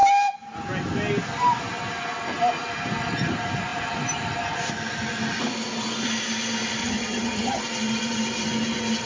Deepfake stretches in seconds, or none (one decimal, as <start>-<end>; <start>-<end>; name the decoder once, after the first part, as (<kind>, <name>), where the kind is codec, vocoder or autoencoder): 6.8-7.6 (vocoder, HiFi-GAN)